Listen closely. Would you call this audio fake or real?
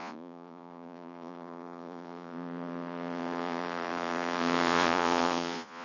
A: fake